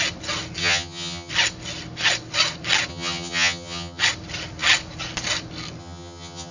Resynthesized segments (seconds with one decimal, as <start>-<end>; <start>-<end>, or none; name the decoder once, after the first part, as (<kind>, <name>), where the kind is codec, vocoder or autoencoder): 0.6-1.3 (vocoder, HiFi-GAN); 2.9-4.0; 5.8-6.5